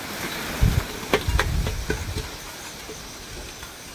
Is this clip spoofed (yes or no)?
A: no